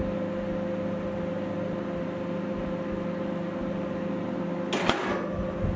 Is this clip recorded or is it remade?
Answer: recorded